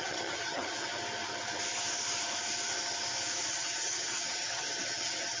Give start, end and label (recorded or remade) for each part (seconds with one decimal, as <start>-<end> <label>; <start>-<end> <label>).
0.0-0.9 remade; 0.9-3.5 recorded; 3.5-5.4 remade